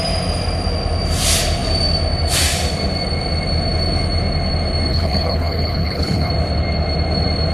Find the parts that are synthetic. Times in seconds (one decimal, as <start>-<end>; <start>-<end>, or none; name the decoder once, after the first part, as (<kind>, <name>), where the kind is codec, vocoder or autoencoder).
4.9-6.3 (codec, HILCodec)